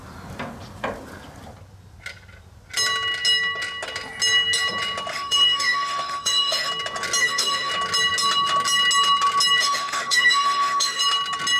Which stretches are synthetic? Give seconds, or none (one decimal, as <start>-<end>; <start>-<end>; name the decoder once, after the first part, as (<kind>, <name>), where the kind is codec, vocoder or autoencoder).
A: 5.1-6.7 (autoencoder, DAC-VAE); 7.2-7.7; 9.6-11.0